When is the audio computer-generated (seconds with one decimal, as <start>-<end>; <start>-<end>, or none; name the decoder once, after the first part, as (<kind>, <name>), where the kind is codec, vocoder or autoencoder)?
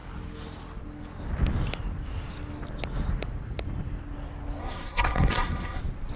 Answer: 4.6-5.8 (codec, SNAC)